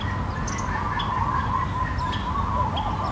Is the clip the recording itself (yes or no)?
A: yes